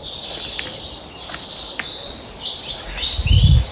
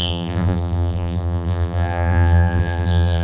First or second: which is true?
first